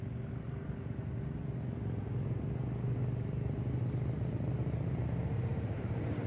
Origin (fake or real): fake